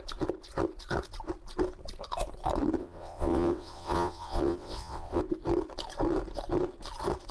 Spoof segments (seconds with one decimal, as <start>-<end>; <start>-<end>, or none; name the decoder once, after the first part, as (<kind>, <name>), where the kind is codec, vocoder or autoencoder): 2.8-5.2 (vocoder, WaveNeXt)